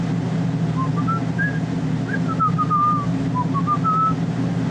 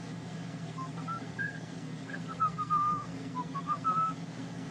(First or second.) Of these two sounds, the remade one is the second